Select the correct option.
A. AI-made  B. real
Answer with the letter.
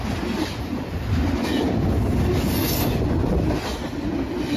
B